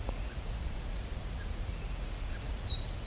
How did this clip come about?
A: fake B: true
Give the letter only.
A